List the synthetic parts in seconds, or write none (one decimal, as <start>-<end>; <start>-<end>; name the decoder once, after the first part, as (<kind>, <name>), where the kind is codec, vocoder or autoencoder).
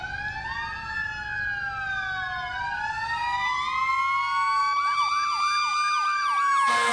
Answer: none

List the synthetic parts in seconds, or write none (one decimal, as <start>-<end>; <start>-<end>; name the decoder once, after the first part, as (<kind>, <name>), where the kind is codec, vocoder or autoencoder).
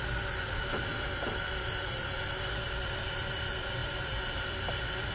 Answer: none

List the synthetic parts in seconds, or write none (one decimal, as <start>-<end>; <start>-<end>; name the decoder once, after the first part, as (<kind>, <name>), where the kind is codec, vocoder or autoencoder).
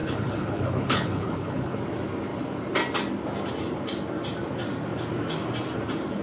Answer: 0.0-1.8 (codec, HILCodec)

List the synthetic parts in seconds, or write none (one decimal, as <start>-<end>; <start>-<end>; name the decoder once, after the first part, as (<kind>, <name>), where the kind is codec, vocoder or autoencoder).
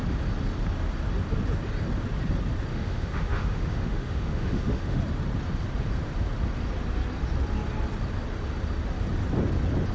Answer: 2.7-5.0 (autoencoder, DAC-VAE)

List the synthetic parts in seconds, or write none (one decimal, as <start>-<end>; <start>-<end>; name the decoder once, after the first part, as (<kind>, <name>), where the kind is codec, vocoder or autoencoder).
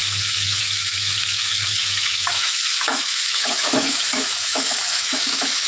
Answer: 0.0-5.7 (autoencoder, DAC-VAE)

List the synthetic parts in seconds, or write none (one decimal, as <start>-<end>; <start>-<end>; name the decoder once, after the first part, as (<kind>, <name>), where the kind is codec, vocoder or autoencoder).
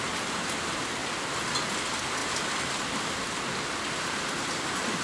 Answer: none